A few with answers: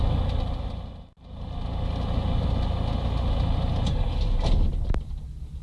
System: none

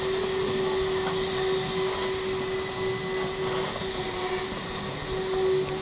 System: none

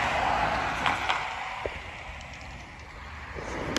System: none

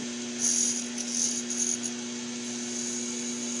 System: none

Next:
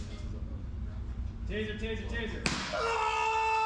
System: none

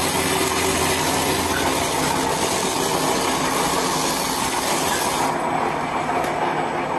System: none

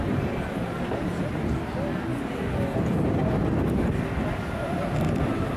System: none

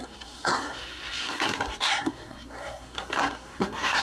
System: codec, SNAC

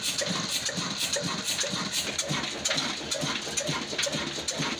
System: none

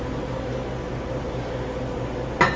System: none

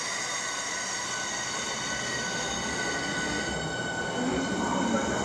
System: none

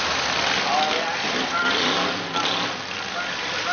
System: none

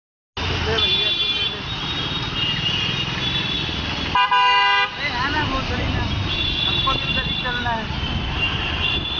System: none